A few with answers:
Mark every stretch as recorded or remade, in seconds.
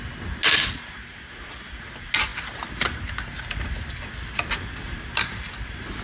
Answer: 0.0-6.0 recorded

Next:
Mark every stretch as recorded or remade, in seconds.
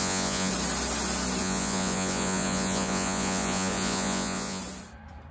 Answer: 0.0-0.5 remade; 0.5-1.4 recorded; 1.4-4.6 remade; 4.6-5.3 recorded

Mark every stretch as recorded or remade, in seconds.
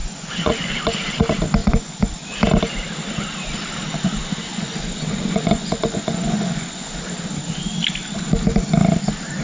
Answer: 0.0-0.7 remade; 0.7-1.6 recorded; 1.6-2.1 remade; 2.1-4.4 recorded; 4.4-6.9 remade; 6.9-9.4 recorded